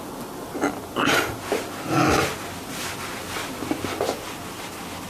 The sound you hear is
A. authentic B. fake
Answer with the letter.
A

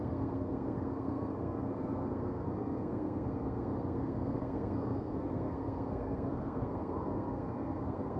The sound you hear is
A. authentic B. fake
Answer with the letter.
B